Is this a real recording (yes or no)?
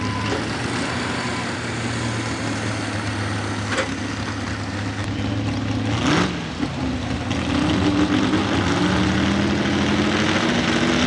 yes